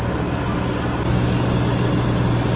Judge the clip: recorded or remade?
recorded